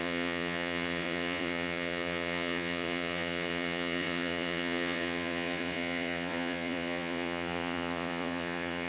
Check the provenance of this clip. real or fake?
fake